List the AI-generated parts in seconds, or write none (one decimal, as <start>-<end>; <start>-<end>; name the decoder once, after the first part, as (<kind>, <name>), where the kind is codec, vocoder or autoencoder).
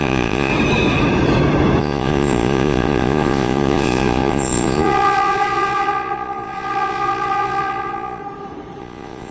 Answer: 0.0-0.5 (vocoder, Vocos); 1.8-8.2; 8.8-9.3